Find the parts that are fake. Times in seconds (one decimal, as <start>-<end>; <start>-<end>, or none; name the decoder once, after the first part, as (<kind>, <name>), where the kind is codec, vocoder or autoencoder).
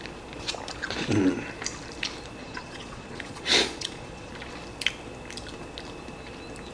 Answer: 2.4-4.3 (vocoder, Vocos)